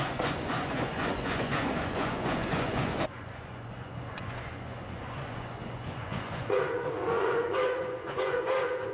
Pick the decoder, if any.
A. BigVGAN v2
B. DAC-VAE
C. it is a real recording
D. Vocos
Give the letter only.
D